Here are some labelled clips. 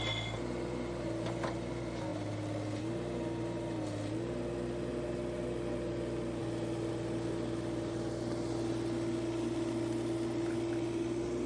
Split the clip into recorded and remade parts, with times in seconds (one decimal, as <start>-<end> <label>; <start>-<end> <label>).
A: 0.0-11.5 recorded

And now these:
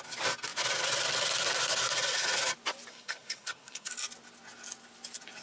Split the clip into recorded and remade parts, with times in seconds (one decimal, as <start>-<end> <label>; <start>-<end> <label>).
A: 0.0-2.9 recorded; 2.9-3.9 remade; 3.9-5.4 recorded

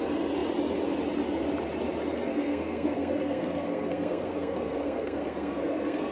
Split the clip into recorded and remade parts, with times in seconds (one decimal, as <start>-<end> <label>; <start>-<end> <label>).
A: 0.0-2.3 recorded; 2.3-6.1 remade